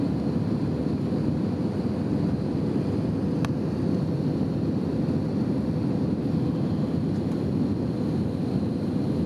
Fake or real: real